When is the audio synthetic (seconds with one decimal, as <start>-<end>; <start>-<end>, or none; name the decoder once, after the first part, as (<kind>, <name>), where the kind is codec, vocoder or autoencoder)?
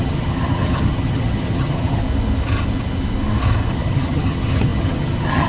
0.0-2.0 (vocoder, HiFi-GAN); 3.7-5.5